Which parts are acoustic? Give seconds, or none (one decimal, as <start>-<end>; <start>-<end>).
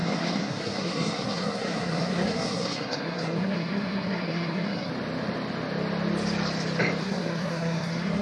4.9-7.0